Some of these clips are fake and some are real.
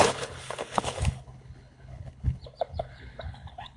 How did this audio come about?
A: fake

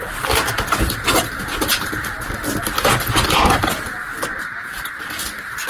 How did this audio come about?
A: real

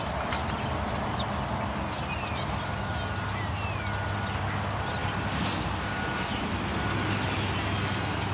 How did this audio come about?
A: real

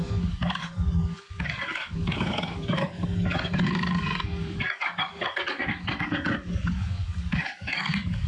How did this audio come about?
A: fake